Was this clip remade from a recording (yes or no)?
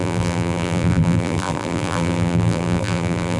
yes